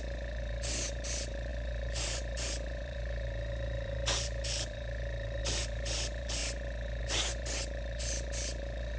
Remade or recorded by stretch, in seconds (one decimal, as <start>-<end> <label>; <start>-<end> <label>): 0.0-6.4 remade; 6.4-7.0 recorded; 7.0-9.0 remade